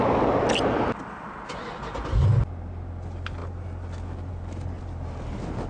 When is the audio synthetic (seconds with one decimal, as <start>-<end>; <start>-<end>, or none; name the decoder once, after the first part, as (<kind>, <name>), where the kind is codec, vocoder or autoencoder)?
none

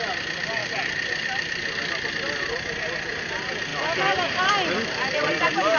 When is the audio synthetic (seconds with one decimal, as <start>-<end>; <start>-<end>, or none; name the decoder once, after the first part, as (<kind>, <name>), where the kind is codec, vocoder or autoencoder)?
none

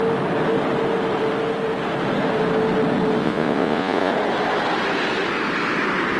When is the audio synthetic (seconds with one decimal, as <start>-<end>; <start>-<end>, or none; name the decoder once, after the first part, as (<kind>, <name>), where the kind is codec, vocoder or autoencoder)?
3.2-4.1 (vocoder, Vocos)